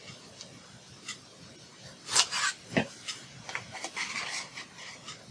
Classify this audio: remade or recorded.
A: recorded